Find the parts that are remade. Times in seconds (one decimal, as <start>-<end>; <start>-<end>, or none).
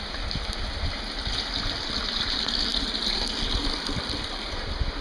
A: none